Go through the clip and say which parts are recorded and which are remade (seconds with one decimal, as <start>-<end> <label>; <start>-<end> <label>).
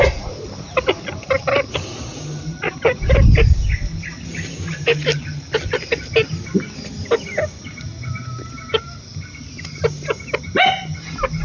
0.0-11.4 recorded